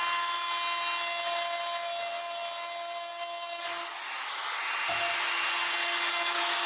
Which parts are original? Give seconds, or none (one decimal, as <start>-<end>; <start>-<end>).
0.0-6.7